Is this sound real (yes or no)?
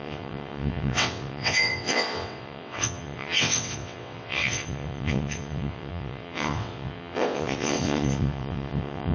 no